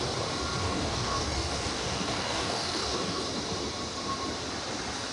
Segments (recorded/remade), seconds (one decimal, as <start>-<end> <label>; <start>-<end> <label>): 0.0-0.6 recorded; 0.6-3.2 remade; 3.2-5.1 recorded